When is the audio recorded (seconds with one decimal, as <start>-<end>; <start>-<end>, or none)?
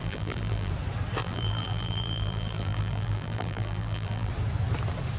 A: 0.7-1.2; 4.3-5.2